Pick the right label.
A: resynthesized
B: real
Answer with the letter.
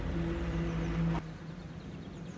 B